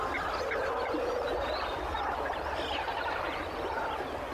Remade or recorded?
recorded